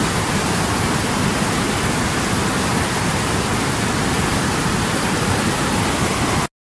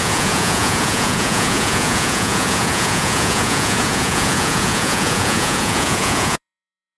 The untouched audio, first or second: first